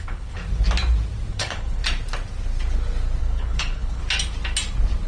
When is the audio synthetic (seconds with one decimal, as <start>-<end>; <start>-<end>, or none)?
0.0-0.4; 1.3-1.8; 3.2-4.0